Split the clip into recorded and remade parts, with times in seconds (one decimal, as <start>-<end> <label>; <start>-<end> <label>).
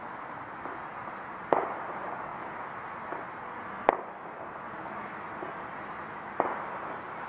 0.0-7.3 recorded